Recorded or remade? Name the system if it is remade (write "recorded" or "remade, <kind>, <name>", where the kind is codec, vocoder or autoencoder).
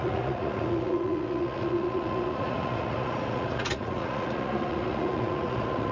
remade, vocoder, Vocos